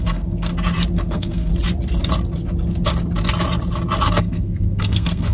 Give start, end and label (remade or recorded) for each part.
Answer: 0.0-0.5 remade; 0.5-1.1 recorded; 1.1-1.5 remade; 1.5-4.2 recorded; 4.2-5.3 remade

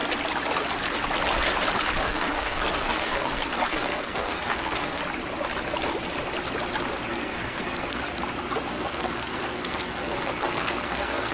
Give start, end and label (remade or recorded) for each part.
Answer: 0.0-2.0 recorded; 2.0-5.0 remade; 5.0-7.1 recorded; 7.1-8.0 remade; 8.0-8.7 recorded; 8.7-11.3 remade

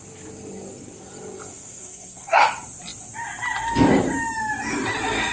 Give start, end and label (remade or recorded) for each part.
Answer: 0.0-1.5 recorded; 1.5-2.4 remade; 2.4-5.3 recorded

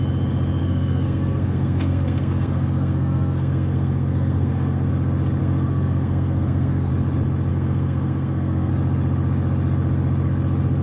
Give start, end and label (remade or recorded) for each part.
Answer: 0.0-0.6 recorded; 0.6-4.9 remade; 4.9-5.4 recorded; 5.4-6.9 remade; 6.9-7.5 recorded; 7.5-8.7 remade; 8.7-10.8 recorded